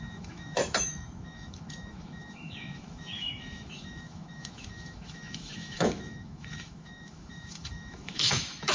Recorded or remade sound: remade